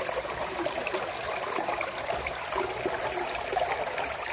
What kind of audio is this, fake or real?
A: real